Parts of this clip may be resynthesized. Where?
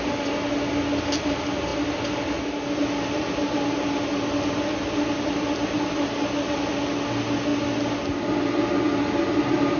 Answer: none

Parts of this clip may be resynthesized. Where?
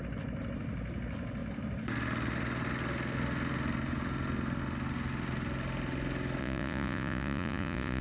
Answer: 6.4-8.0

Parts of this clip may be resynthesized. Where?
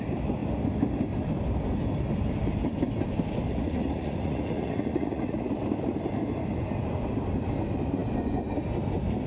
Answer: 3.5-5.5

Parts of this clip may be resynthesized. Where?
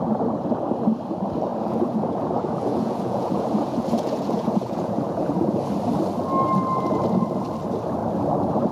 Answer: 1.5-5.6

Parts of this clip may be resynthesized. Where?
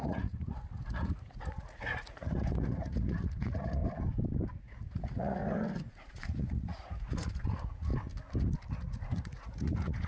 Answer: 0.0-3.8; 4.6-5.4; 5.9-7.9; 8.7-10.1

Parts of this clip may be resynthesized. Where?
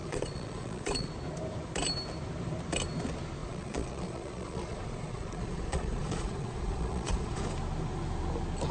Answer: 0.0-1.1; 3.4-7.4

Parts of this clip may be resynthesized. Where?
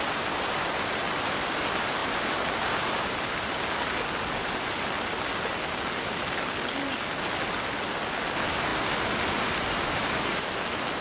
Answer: none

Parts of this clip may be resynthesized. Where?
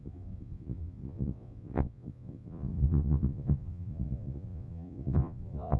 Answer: 0.0-5.8